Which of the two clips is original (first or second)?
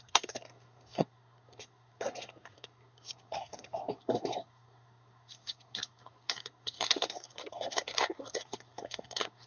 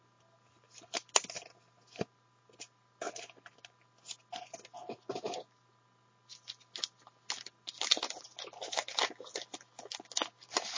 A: second